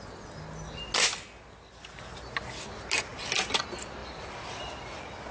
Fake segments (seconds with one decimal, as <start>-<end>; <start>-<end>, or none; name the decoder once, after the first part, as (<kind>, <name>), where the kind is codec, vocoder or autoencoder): 3.1-3.6 (vocoder, BigVGAN v2); 4.0-4.6

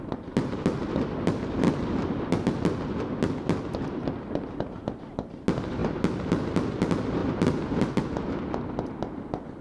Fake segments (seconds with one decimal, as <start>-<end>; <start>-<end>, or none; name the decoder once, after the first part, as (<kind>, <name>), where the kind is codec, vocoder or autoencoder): none

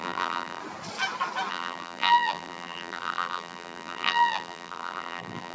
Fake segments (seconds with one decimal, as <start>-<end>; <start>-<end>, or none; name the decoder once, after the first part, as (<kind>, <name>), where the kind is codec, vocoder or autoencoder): 0.0-0.6 (vocoder, BigVGAN v2); 1.5-5.5

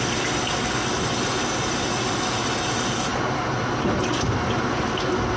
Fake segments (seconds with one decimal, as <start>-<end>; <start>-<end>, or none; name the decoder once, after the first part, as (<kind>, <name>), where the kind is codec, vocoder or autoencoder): none

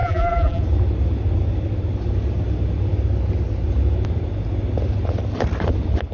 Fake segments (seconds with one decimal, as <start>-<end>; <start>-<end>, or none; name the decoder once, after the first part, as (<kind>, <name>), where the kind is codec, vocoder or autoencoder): 0.0-0.6 (vocoder, BigVGAN v2)

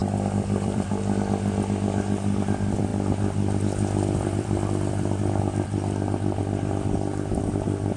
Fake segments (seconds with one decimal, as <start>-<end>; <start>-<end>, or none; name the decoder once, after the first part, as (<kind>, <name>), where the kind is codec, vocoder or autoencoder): 0.0-0.9 (vocoder, BigVGAN v2); 2.9-6.4

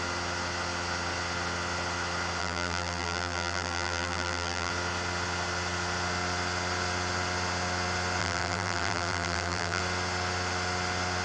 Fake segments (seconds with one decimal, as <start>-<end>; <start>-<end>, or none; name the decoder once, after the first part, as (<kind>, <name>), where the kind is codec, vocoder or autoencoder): 2.4-4.7 (vocoder, BigVGAN v2); 8.2-9.8

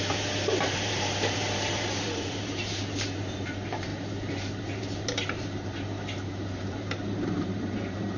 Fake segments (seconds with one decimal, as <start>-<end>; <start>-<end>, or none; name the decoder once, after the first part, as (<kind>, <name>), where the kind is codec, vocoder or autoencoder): 0.0-8.2 (vocoder, BigVGAN v2)